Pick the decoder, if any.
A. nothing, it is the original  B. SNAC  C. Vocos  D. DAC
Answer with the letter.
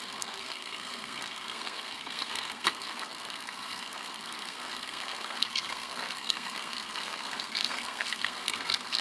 B